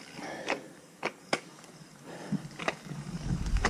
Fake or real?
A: fake